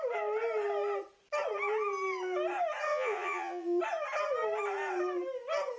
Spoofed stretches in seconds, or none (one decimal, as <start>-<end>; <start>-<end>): 2.9-3.8